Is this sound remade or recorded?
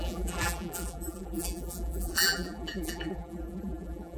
remade